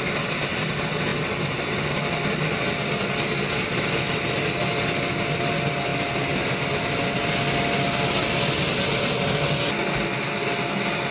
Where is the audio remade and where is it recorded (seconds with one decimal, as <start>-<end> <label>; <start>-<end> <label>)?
0.0-11.1 recorded